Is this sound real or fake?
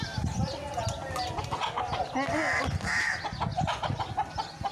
real